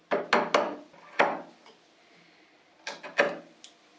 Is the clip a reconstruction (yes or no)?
no